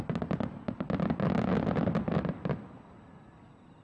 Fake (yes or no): no